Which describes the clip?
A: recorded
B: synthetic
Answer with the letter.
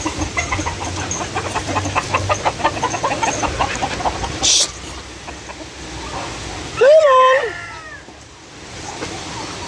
B